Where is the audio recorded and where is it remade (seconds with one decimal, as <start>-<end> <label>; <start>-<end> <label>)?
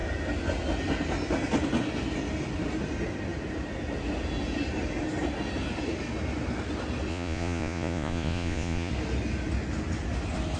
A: 0.0-7.1 recorded; 7.1-8.9 remade; 8.9-10.6 recorded